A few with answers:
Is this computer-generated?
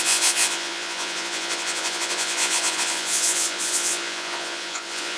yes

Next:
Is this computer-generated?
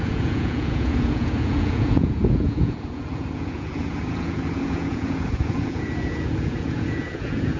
yes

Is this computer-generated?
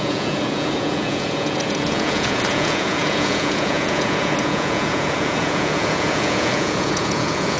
yes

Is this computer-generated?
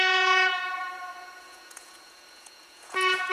yes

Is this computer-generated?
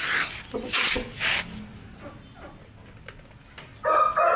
no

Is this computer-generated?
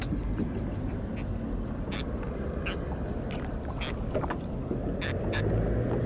no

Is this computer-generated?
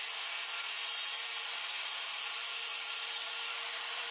no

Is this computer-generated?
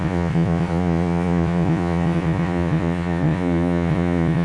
yes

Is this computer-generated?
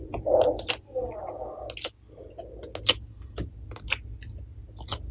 no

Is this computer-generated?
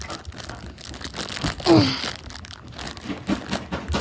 no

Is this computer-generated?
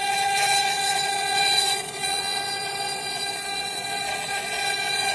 yes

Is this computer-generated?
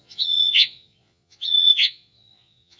yes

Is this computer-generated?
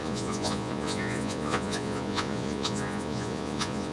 yes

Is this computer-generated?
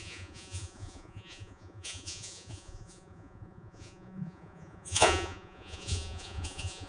yes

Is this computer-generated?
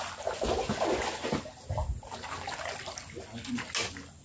no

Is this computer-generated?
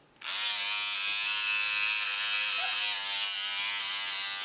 no